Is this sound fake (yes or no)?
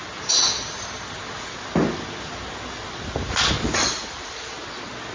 no